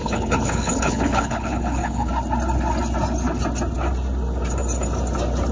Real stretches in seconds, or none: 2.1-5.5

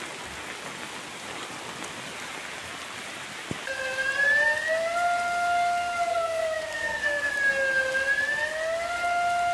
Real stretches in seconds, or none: 0.0-6.1; 7.3-9.5

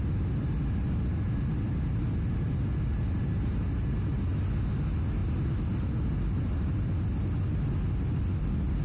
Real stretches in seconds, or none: 0.0-8.8

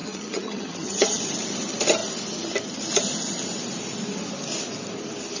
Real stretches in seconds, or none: 1.2-5.4

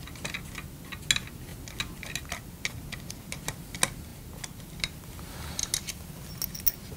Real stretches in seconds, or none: 0.0-7.0

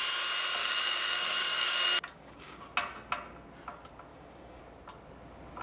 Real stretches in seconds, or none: 0.0-0.6; 2.6-4.1; 4.6-5.6